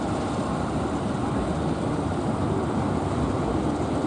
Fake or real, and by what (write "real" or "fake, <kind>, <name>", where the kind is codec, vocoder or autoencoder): real